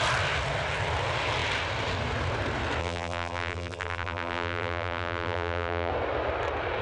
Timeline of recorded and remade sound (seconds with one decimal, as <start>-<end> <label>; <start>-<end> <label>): 0.0-2.8 recorded; 2.8-5.9 remade; 5.9-6.8 recorded